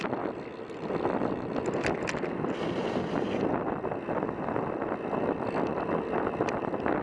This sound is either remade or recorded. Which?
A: recorded